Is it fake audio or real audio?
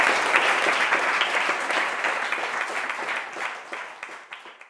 real